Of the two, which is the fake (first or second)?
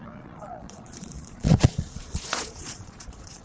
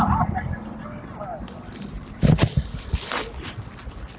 first